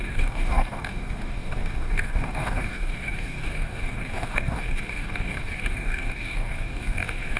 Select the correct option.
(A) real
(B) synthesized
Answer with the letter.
B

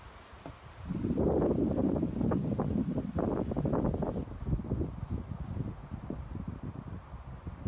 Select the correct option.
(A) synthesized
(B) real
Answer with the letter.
B